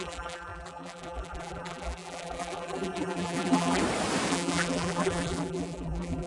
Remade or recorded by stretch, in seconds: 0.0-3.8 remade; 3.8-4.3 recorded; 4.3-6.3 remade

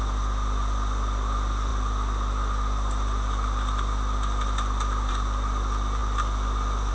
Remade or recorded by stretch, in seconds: 0.0-6.9 recorded

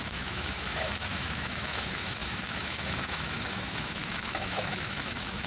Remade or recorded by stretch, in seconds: 0.0-5.5 remade

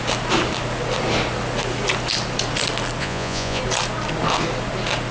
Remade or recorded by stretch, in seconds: 0.0-3.0 recorded; 3.0-3.6 remade; 3.6-5.1 recorded

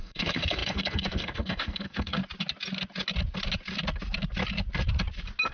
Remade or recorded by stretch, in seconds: 0.0-2.2 remade; 2.2-5.5 recorded

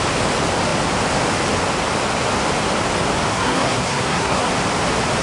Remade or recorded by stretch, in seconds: 0.0-3.3 recorded; 3.3-4.5 remade; 4.5-5.2 recorded